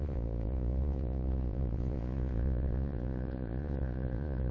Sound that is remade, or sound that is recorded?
remade